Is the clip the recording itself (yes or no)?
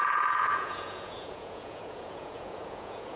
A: no